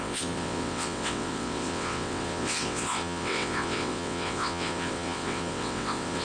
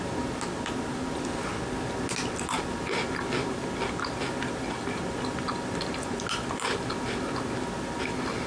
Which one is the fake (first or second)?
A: first